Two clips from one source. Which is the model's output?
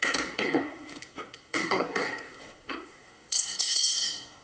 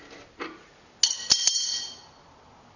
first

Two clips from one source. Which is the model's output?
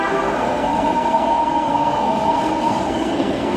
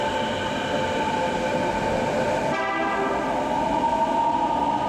first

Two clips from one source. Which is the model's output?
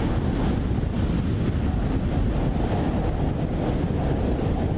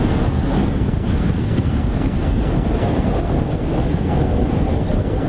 second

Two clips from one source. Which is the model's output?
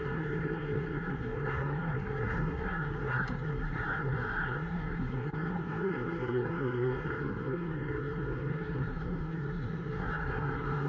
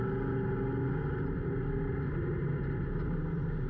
first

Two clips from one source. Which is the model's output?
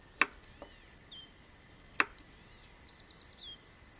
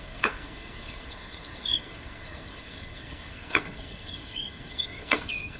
second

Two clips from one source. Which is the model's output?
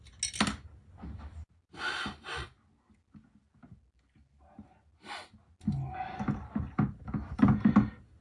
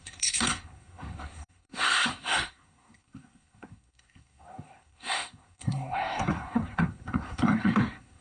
second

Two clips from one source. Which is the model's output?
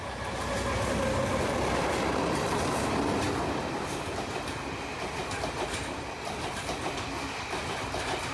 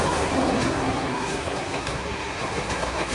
second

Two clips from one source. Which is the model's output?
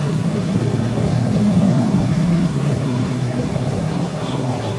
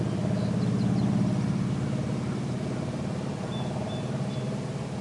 first